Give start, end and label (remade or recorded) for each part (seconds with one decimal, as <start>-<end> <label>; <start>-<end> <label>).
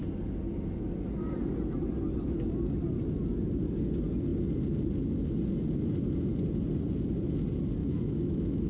0.0-7.8 recorded; 7.8-8.7 remade